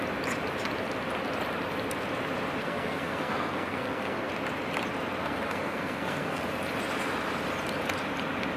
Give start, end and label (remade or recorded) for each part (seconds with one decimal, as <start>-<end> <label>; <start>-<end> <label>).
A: 0.0-2.6 recorded; 2.6-4.3 remade; 4.3-5.2 recorded; 5.2-6.4 remade; 6.4-8.6 recorded